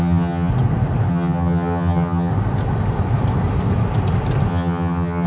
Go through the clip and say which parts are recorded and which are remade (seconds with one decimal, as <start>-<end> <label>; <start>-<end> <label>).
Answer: 0.0-0.5 remade; 0.5-1.1 recorded; 1.1-2.3 remade; 2.3-4.5 recorded; 4.5-5.3 remade